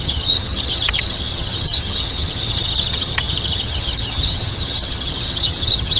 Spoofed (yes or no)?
yes